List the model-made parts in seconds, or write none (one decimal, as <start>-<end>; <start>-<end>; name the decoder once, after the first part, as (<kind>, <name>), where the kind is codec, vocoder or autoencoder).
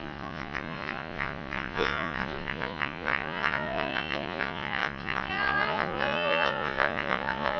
0.0-7.6 (vocoder, Vocos)